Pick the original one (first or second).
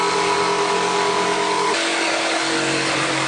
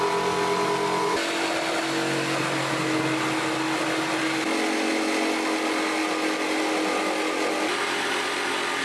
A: second